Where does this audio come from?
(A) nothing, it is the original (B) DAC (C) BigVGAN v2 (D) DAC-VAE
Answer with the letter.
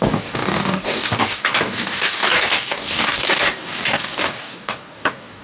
B